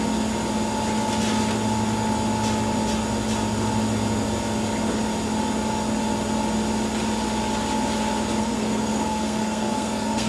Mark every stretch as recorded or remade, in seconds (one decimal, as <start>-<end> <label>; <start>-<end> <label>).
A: 0.0-8.4 recorded; 8.4-10.3 remade